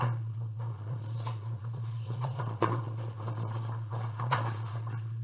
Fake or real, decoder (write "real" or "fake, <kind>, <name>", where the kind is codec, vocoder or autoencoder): fake, vocoder, Vocos